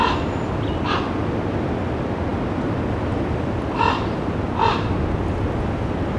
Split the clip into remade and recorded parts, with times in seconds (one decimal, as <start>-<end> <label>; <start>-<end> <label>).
0.0-6.2 recorded